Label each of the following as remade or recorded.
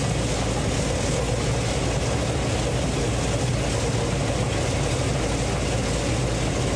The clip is recorded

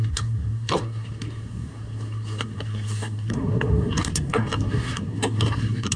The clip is remade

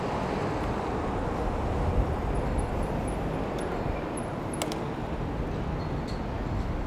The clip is recorded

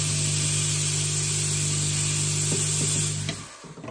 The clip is recorded